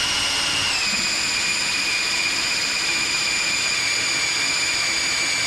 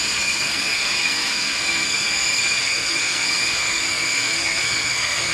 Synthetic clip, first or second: second